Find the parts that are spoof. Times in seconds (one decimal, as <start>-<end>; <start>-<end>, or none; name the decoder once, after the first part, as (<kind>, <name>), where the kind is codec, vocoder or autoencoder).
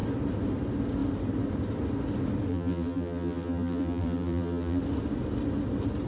2.5-4.8 (vocoder, BigVGAN v2)